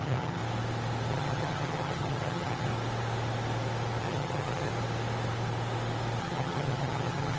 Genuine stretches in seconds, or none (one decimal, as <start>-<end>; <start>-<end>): 0.4-1.1; 2.7-4.0; 4.7-6.2